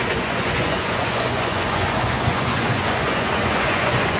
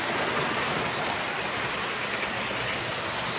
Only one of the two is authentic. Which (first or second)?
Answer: second